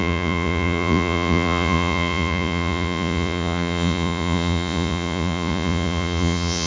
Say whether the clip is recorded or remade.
remade